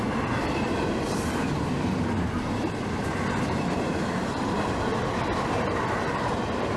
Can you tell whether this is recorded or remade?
remade